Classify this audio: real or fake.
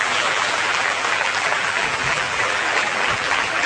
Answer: fake